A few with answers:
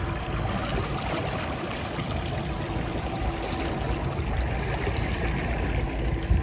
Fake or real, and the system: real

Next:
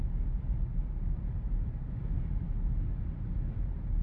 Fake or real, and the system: real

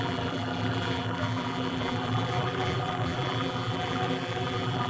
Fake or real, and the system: fake, vocoder, BigVGAN v2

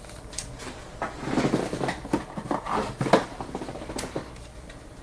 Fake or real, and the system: real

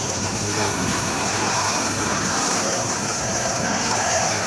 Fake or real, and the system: fake, codec, SNAC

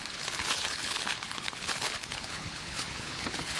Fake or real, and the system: fake, codec, HILCodec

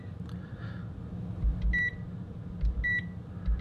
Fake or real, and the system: real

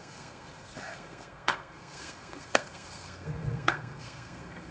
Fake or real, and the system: fake, codec, SNAC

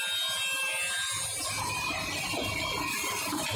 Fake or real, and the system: real